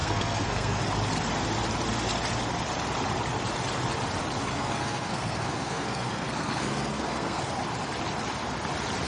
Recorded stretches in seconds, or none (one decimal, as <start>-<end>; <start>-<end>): 0.8-4.4; 7.4-9.1